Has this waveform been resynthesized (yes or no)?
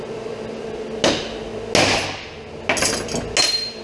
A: no